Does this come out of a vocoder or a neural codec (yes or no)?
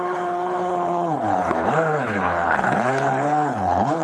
yes